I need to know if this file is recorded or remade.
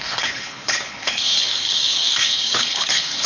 remade